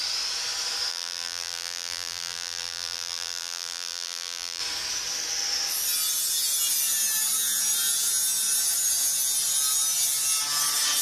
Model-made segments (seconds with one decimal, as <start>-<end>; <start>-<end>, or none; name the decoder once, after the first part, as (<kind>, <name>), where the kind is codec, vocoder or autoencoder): 0.9-4.6 (vocoder, BigVGAN v2)